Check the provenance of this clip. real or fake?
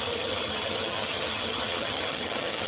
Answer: fake